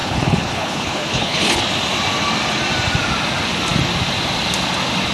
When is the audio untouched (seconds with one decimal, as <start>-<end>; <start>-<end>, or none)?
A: 1.6-5.1

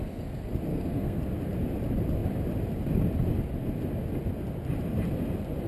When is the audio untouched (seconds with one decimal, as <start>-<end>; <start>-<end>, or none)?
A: 0.0-0.7; 1.2-5.7